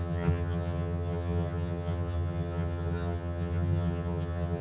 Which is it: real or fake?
fake